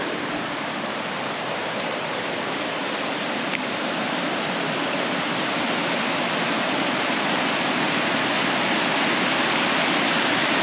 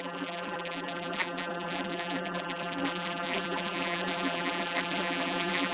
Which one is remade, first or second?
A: second